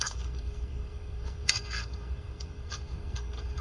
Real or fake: fake